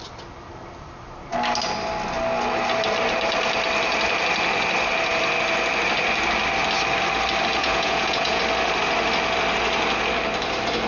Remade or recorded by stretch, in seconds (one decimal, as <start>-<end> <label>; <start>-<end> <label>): 0.0-7.6 recorded; 7.6-8.4 remade; 8.4-10.9 recorded